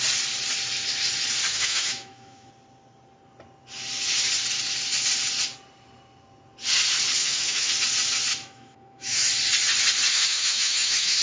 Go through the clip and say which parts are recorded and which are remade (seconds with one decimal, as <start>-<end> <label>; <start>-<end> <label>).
0.0-1.5 recorded; 1.5-2.5 remade; 2.5-7.2 recorded; 7.2-7.7 remade; 7.7-8.4 recorded; 8.4-9.3 remade; 9.3-10.1 recorded; 10.1-11.2 remade